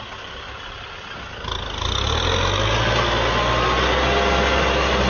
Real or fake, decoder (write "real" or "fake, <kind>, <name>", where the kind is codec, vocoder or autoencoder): real